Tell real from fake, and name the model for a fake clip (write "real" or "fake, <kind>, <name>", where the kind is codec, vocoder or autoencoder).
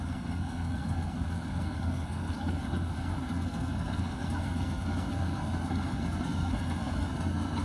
fake, codec, SNAC